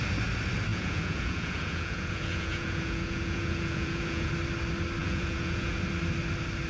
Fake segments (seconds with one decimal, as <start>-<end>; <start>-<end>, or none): 0.7-4.3; 5.0-5.8